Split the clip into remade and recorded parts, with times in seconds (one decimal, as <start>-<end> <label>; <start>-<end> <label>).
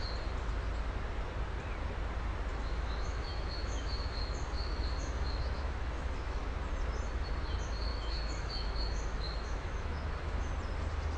0.0-2.5 recorded; 2.5-6.4 remade; 6.4-7.9 recorded; 7.9-10.5 remade; 10.5-11.2 recorded